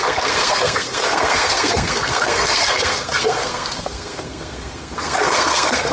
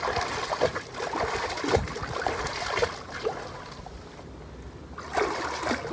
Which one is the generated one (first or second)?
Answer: first